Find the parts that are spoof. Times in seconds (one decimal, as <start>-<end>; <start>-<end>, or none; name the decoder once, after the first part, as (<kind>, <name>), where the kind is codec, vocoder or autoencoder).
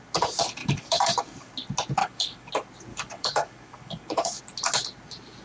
0.6-1.5 (codec, DAC); 2.0-2.5; 2.9-4.4